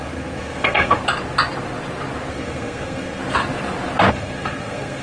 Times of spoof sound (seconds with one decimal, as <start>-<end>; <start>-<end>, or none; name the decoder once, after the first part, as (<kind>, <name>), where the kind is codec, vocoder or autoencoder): 0.0-1.0 (codec, SNAC); 2.3-3.2; 4.1-5.0